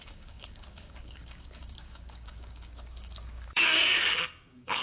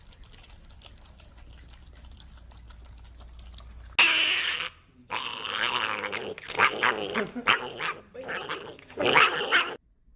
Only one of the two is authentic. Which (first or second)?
second